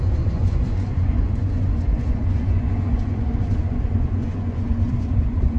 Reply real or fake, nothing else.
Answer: fake